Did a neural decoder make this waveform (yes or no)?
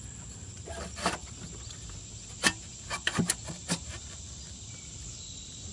no